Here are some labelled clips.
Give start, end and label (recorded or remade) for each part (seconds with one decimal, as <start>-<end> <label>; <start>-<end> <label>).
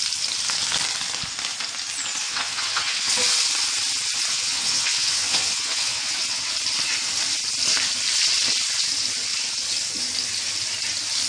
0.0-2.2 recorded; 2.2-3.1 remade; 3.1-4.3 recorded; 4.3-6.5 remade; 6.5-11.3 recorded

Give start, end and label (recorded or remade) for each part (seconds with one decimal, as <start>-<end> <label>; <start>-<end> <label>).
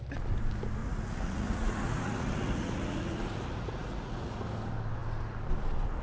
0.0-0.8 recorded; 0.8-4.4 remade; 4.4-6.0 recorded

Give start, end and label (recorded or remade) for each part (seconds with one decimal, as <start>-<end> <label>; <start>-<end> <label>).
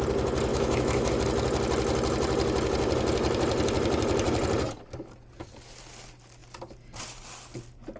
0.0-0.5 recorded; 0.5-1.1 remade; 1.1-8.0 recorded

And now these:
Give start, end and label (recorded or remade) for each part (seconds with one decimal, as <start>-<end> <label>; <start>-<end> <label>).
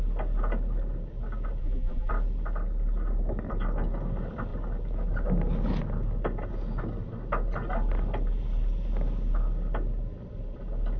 0.0-1.6 recorded; 1.6-2.1 remade; 2.1-11.0 recorded